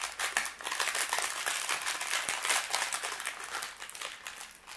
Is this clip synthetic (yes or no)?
no